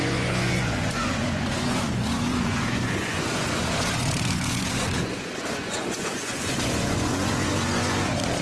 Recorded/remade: remade